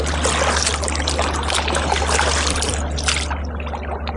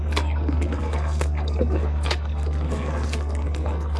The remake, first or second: second